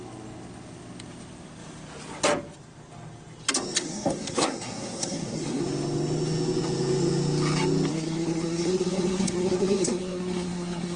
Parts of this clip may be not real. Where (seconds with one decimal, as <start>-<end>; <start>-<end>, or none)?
3.8-5.6; 7.9-11.0